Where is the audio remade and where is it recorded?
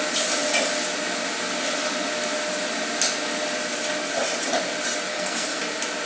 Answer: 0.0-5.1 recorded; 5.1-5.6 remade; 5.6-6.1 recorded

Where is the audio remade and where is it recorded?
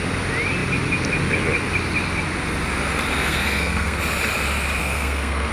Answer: 0.0-3.2 recorded; 3.2-4.0 remade; 4.0-4.8 recorded; 4.8-5.5 remade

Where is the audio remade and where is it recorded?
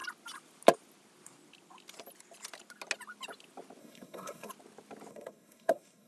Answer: 0.0-3.8 recorded; 3.8-4.5 remade; 4.5-5.1 recorded; 5.1-6.1 remade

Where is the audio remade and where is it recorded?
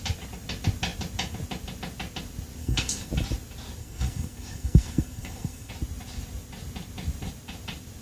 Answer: 0.0-2.6 recorded; 2.6-3.1 remade; 3.1-3.8 recorded; 3.8-5.7 remade; 5.7-8.0 recorded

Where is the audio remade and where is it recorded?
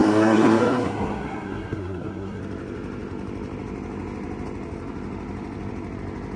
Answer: 0.0-2.4 remade; 2.4-6.4 recorded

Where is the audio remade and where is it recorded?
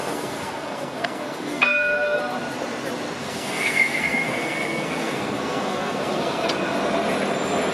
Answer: 0.0-2.2 remade; 2.2-3.2 recorded; 3.2-6.5 remade; 6.5-7.7 recorded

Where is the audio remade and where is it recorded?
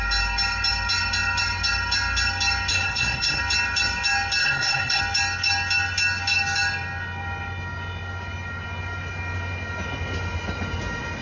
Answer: 0.0-2.7 recorded; 2.7-3.4 remade; 3.4-4.4 recorded; 4.4-5.0 remade; 5.0-11.2 recorded